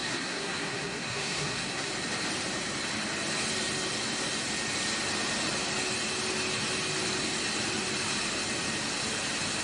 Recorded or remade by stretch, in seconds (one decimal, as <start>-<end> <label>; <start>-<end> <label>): 0.0-1.9 remade; 1.9-9.6 recorded